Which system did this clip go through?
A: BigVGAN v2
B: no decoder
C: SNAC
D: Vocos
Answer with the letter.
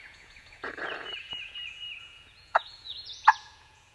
D